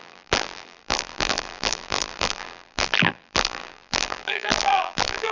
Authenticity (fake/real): fake